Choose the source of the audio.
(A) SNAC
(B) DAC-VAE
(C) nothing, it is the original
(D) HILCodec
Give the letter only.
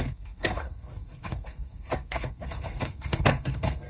A